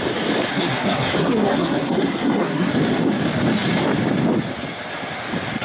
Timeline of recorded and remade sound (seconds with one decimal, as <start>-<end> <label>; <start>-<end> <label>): 0.0-0.5 recorded; 0.5-2.7 remade; 2.7-5.6 recorded

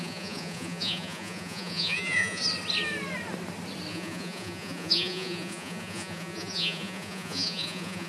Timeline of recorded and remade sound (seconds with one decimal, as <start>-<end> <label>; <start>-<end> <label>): 0.0-2.4 remade; 2.4-3.9 recorded; 3.9-8.1 remade

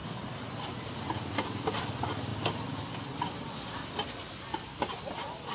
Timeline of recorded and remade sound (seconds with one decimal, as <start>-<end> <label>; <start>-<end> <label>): 0.0-5.5 recorded

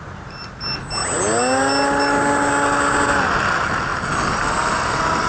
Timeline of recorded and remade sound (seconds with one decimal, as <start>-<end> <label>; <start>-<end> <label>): 0.0-5.3 recorded

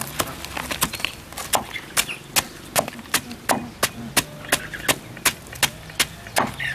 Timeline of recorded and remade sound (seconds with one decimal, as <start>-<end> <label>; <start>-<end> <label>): 0.0-6.7 recorded

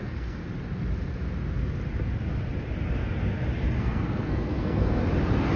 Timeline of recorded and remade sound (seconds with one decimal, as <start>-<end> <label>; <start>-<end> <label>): 0.0-0.4 remade; 0.4-3.8 recorded; 3.8-5.0 remade; 5.0-5.6 recorded

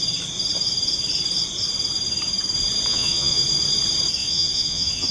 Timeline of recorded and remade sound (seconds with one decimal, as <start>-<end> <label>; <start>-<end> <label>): 0.0-2.9 recorded; 2.9-3.4 remade; 3.4-4.2 recorded; 4.2-5.1 remade

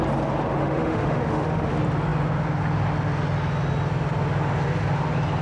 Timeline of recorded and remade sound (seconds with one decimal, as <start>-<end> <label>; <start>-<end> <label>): 0.0-0.6 recorded; 0.6-1.7 remade; 1.7-5.4 recorded